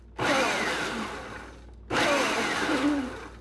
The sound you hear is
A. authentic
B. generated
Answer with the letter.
A